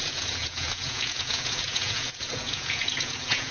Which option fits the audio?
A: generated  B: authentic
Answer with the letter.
A